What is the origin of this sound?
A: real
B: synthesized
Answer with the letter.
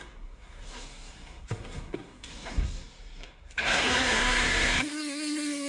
B